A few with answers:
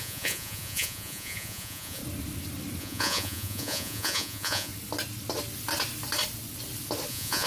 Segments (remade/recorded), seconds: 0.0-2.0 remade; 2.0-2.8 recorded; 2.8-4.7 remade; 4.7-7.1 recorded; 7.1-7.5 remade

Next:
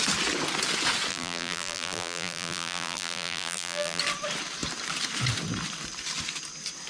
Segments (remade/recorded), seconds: 0.0-1.1 recorded; 1.1-4.0 remade; 4.0-6.9 recorded